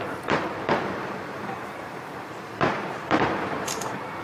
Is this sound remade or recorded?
remade